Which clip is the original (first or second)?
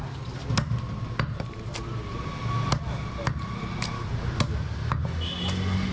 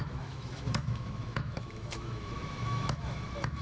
first